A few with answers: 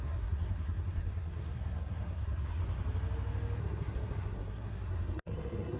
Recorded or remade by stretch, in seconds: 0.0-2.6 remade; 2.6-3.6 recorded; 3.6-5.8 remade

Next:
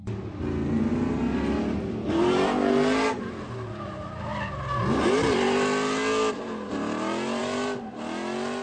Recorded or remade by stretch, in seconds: 0.0-8.6 recorded

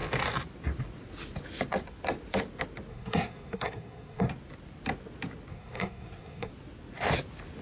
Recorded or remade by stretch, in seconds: 0.0-2.9 recorded; 2.9-4.3 remade; 4.3-5.5 recorded; 5.5-6.5 remade; 6.5-7.6 recorded